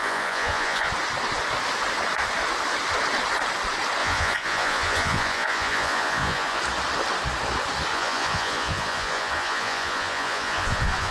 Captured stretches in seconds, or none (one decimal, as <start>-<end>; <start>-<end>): 0.9-4.0; 6.6-7.9